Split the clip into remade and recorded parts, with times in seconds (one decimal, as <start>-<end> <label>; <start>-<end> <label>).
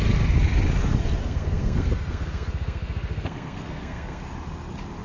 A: 0.0-1.2 recorded; 1.2-4.2 remade; 4.2-5.0 recorded